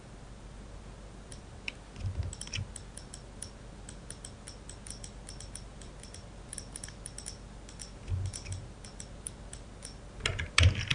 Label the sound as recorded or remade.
recorded